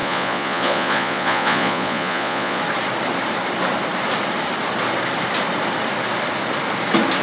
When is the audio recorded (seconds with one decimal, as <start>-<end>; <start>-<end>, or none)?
2.6-7.2